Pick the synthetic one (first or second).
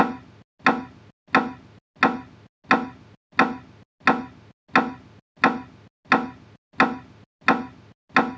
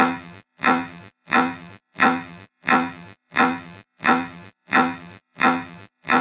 second